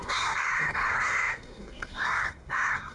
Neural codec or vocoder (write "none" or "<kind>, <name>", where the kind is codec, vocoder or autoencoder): codec, SNAC